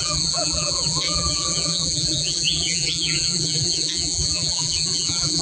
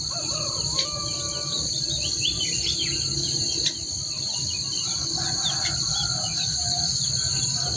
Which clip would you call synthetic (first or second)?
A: first